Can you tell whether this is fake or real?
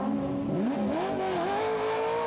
real